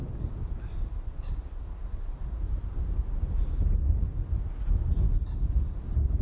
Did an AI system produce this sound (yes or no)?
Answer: no